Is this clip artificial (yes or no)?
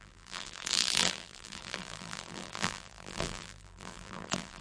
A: yes